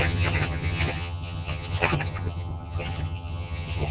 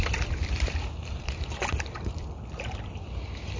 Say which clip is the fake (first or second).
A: first